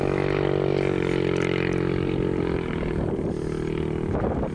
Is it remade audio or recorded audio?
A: recorded